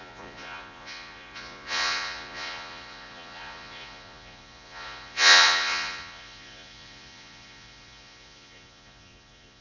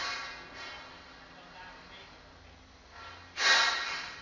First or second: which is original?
second